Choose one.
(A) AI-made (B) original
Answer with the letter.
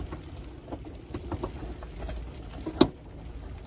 B